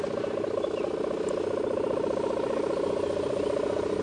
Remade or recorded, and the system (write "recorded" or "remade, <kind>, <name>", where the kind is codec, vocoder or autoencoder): recorded